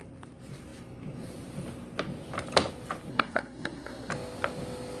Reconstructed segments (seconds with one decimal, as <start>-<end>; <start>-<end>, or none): 3.1-4.1

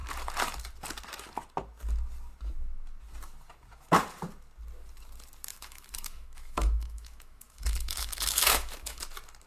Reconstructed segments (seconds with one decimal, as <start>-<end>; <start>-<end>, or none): 5.5-9.0